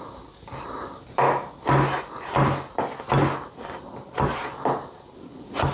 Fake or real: real